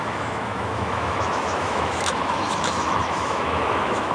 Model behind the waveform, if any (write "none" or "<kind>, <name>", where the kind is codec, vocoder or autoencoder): autoencoder, DAC-VAE